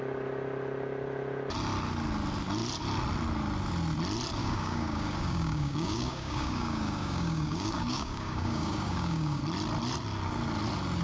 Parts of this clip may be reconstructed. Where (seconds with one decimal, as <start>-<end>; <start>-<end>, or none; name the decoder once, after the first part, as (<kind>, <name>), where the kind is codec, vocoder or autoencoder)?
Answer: 4.4-9.4 (codec, DAC)

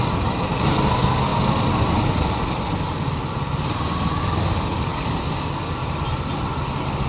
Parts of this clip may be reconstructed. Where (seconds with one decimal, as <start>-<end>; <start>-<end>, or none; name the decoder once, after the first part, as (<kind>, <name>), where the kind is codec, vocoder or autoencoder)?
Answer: 4.9-5.7 (codec, DAC)

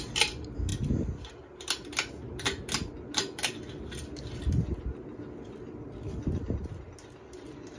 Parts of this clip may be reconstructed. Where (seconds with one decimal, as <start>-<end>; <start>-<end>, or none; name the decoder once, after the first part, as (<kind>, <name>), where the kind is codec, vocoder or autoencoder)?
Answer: none